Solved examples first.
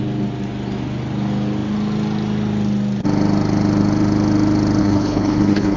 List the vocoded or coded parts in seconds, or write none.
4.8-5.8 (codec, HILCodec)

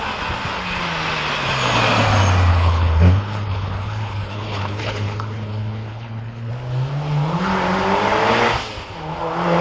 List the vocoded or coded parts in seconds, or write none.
2.5-6.5 (codec, HILCodec)

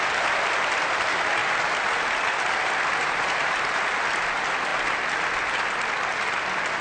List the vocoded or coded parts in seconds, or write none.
none

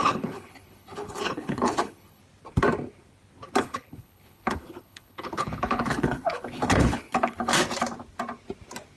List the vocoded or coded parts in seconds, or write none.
0.0-2.2 (codec, HILCodec); 3.6-7.5

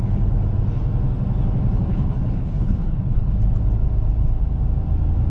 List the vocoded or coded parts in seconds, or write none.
1.9-3.3 (codec, HILCodec)

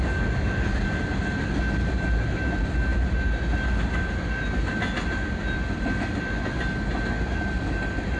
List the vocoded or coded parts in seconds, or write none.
none

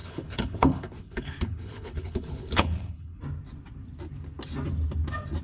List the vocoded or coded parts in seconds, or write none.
0.0-3.2 (codec, HILCodec)

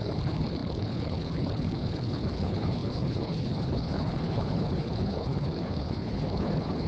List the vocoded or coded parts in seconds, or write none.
0.0-6.9 (codec, HILCodec)